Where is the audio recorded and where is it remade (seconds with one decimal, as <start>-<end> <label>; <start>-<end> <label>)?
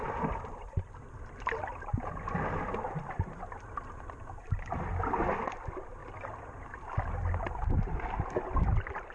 0.0-9.1 recorded